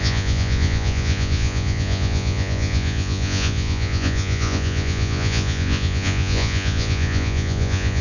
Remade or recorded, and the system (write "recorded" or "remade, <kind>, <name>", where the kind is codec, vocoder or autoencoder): remade, vocoder, Vocos